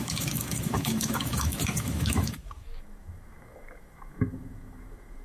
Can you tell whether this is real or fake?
fake